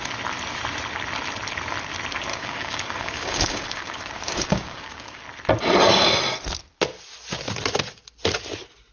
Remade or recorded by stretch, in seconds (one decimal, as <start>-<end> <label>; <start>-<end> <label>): 0.0-2.3 recorded; 2.3-5.2 remade; 5.2-8.9 recorded